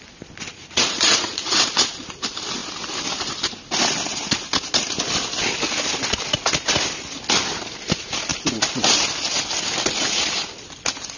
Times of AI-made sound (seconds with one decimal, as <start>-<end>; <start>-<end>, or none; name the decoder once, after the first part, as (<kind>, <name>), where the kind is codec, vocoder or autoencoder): 0.5-1.6 (vocoder, Vocos)